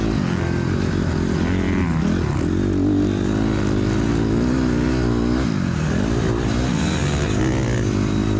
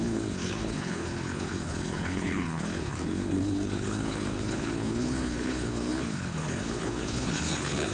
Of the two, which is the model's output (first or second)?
second